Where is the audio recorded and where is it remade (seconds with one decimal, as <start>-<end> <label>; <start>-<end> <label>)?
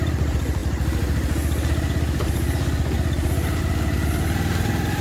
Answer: 0.0-5.0 recorded